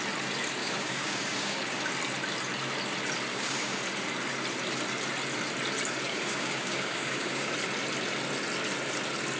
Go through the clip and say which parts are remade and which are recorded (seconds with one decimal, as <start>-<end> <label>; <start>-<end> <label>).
0.0-0.6 recorded; 0.6-1.8 remade; 1.8-3.3 recorded; 3.3-3.8 remade; 3.8-6.1 recorded; 6.1-7.5 remade; 7.5-9.4 recorded